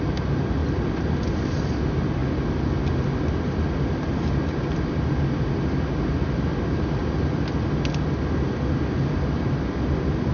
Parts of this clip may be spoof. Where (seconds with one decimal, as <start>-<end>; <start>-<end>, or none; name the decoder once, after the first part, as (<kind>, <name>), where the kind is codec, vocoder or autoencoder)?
none